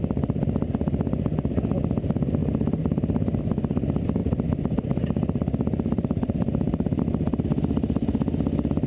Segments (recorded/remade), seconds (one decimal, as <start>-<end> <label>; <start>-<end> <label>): 0.0-2.4 recorded; 2.4-3.4 remade; 3.4-4.2 recorded; 4.2-7.0 remade; 7.0-8.9 recorded